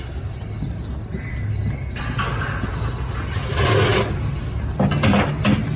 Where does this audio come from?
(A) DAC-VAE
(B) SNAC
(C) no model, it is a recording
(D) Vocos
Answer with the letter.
C